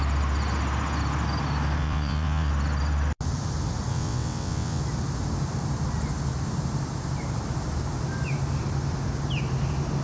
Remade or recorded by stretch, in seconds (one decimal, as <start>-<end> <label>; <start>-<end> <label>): 0.0-1.8 recorded; 1.8-2.5 remade; 2.5-3.9 recorded; 3.9-4.8 remade; 4.8-10.0 recorded